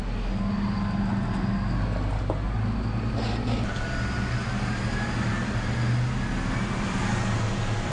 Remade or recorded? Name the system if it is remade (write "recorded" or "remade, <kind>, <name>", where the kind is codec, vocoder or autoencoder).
recorded